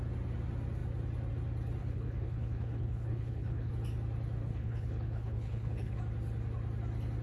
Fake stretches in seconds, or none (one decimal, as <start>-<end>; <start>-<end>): 1.8-3.7; 4.4-6.0